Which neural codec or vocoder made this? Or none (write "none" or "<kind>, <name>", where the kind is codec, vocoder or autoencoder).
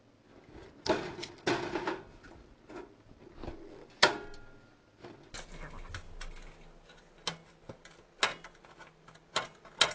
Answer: none